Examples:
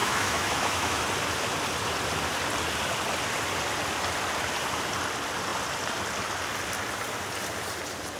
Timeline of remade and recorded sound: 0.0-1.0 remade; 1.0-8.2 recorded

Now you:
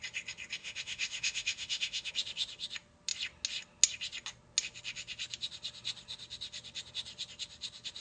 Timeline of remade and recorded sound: 0.0-0.6 recorded; 0.6-2.1 remade; 2.1-8.0 recorded